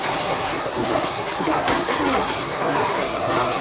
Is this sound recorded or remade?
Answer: remade